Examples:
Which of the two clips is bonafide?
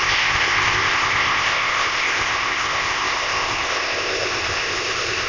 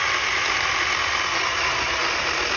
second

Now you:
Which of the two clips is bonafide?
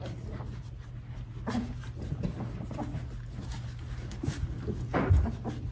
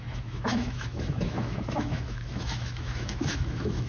first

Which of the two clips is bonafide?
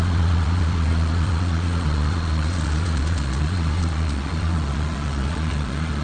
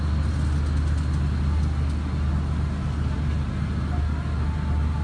second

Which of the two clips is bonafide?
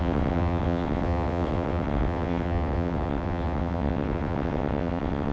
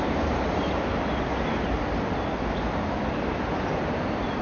second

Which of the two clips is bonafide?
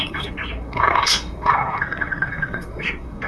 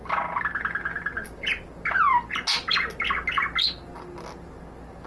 second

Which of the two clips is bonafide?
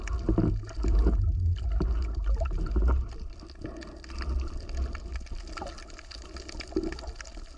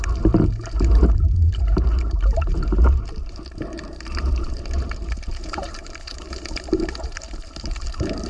first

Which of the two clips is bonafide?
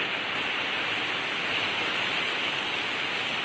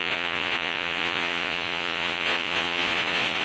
first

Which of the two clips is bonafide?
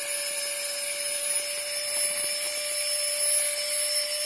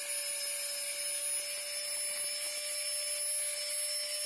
second